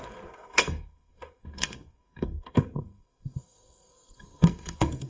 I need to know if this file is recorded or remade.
remade